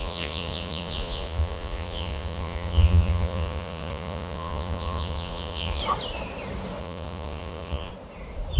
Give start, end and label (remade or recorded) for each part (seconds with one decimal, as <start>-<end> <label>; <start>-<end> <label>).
0.0-5.8 remade; 5.8-6.8 recorded; 6.8-7.9 remade; 7.9-8.6 recorded